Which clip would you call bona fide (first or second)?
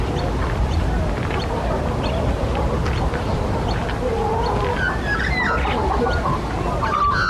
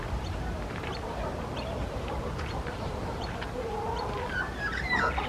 first